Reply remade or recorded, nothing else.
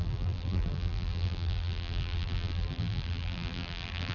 remade